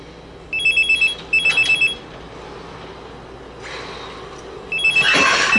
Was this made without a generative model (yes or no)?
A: yes